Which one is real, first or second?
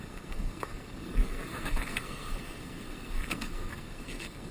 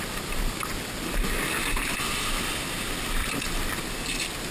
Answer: second